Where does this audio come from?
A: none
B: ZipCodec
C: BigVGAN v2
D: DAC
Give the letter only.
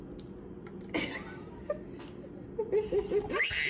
A